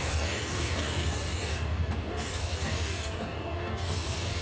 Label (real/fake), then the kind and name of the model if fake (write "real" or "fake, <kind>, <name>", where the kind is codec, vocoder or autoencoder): fake, codec, DAC